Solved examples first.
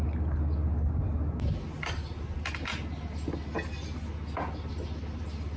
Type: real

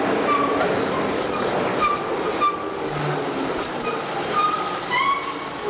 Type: real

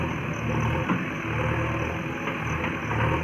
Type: real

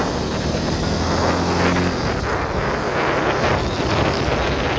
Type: real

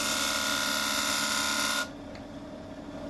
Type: real